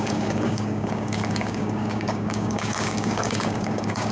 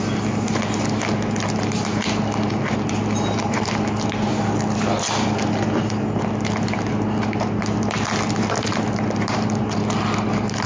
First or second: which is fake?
first